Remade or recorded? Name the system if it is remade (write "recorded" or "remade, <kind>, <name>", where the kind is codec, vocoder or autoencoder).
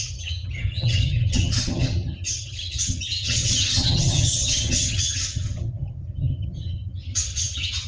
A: remade, vocoder, HiFi-GAN